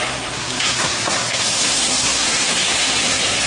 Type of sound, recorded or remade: remade